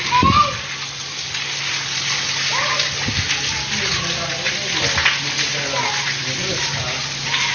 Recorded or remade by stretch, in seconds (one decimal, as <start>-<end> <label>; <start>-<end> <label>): 0.0-7.5 recorded